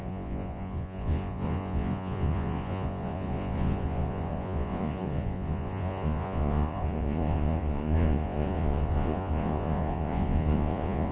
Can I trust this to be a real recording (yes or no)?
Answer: no